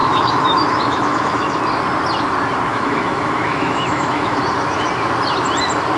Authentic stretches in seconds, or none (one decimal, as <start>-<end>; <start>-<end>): 1.6-2.7; 4.4-6.0